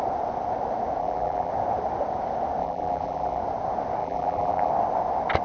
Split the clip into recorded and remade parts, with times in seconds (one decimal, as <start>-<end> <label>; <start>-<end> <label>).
0.0-1.0 recorded; 1.0-1.5 remade; 1.5-2.6 recorded; 2.6-3.4 remade; 3.4-4.0 recorded; 4.0-4.7 remade; 4.7-5.4 recorded

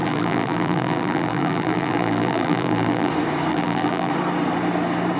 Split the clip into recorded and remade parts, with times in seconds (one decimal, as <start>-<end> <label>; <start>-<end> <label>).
0.0-3.1 remade; 3.1-3.5 recorded; 3.5-4.1 remade; 4.1-5.2 recorded